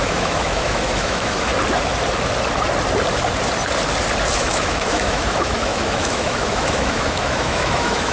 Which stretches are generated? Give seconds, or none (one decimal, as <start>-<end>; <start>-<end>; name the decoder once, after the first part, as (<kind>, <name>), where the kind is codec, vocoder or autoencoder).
0.0-1.5 (autoencoder, DAC-VAE); 4.4-8.1